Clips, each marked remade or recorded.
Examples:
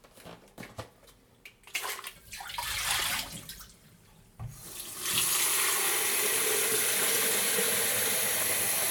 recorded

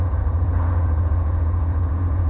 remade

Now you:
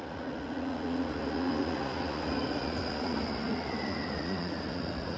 remade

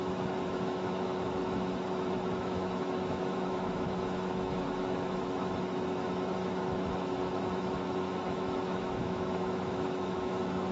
remade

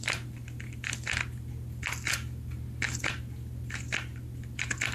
recorded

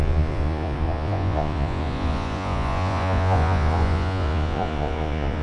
remade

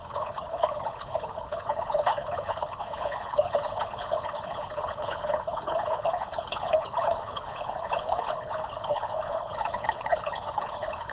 remade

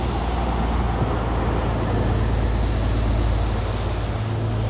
recorded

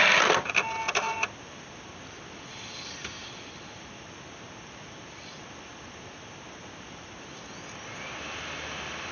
recorded